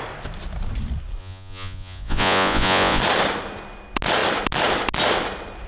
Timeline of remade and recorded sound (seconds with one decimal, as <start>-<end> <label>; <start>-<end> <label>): 0.0-1.2 recorded; 1.2-3.0 remade; 3.0-5.7 recorded

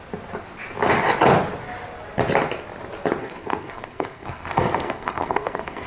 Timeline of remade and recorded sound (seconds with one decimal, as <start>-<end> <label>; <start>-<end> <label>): 0.0-3.2 recorded; 3.2-5.9 remade

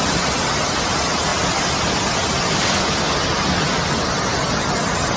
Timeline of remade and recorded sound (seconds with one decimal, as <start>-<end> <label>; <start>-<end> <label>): 0.0-5.2 recorded

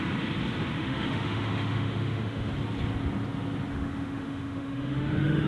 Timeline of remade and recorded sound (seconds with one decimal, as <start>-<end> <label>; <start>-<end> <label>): 0.0-0.8 recorded; 0.8-2.5 remade; 2.5-3.7 recorded; 3.7-5.5 remade